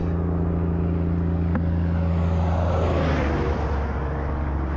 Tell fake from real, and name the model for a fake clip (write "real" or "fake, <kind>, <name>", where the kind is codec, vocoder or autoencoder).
real